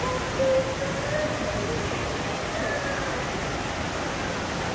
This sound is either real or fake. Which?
real